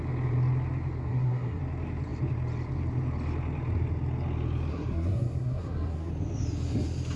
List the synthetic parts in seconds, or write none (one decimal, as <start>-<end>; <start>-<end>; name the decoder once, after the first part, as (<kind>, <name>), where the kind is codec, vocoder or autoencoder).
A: 1.0-1.6 (codec, SNAC); 4.7-6.1